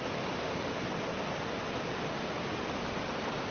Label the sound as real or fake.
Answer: real